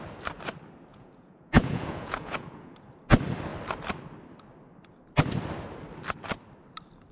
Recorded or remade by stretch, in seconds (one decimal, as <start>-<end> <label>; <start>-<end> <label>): 0.0-0.9 recorded; 0.9-2.7 remade; 2.7-7.1 recorded

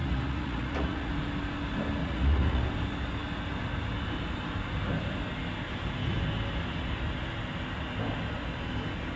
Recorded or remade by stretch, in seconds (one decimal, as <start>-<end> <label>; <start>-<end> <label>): 0.0-1.1 remade; 1.1-2.0 recorded; 2.0-2.6 remade; 2.6-9.2 recorded

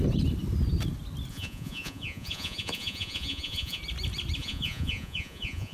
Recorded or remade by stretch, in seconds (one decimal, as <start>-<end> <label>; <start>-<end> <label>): 0.0-1.3 recorded; 1.3-3.8 remade; 3.8-4.4 recorded; 4.4-5.7 remade

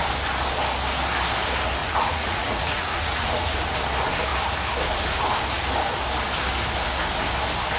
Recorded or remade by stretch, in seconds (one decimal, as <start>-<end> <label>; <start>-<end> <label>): 0.0-1.8 recorded; 1.8-3.5 remade; 3.5-7.8 recorded

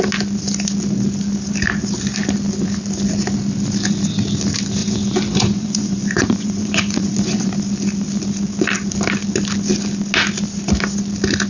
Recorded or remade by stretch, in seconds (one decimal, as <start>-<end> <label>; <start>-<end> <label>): 0.0-4.8 recorded; 4.8-7.5 remade; 7.5-11.5 recorded